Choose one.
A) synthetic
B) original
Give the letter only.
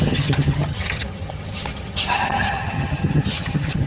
A